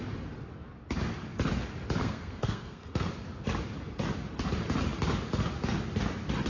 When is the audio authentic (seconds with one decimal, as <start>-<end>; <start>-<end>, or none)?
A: 0.0-2.0; 3.1-6.5